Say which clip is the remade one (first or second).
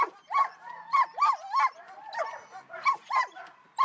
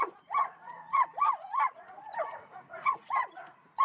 second